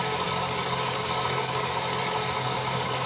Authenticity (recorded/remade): remade